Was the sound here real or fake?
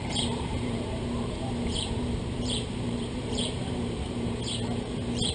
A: fake